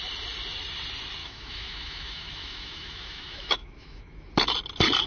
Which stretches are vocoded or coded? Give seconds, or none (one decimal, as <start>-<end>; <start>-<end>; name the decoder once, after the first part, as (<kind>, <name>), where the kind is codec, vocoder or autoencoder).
1.2-4.3 (autoencoder, DAC-VAE)